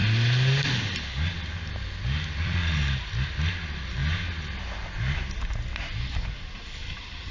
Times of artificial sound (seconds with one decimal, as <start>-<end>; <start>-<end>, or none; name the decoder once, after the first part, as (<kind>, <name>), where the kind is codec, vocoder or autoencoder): none